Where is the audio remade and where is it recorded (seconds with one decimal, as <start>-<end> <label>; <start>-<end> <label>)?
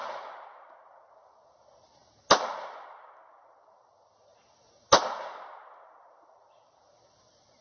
0.0-1.1 remade; 1.1-7.6 recorded